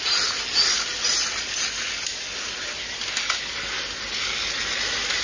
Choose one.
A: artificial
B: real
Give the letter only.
B